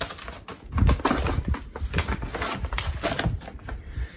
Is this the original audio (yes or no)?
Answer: yes